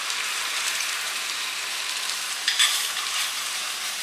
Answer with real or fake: fake